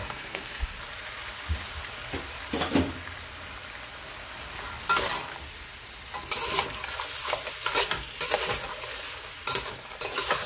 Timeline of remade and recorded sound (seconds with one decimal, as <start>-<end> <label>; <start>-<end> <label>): 0.0-0.8 remade; 0.8-10.5 recorded